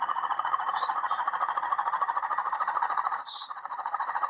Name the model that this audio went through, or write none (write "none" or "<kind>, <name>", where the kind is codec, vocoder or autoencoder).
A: vocoder, Vocos